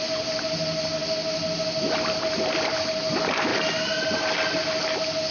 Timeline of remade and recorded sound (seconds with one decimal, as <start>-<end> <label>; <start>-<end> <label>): 0.0-5.3 recorded